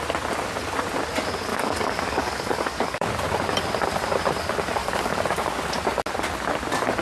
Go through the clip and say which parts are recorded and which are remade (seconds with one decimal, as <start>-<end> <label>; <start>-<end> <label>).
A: 0.0-1.5 recorded; 1.5-3.1 remade; 3.1-4.8 recorded; 4.8-5.7 remade; 5.7-7.0 recorded